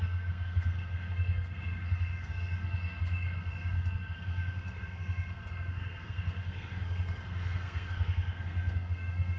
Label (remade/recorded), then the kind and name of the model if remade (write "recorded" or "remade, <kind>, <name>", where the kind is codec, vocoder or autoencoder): remade, codec, SNAC